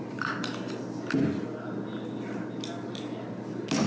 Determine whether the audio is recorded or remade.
recorded